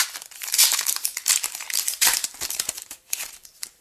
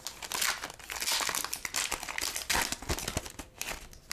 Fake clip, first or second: first